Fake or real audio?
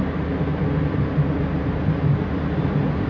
real